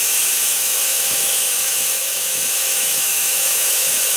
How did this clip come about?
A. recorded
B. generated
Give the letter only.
B